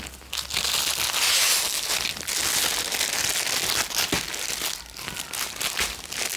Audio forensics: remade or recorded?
recorded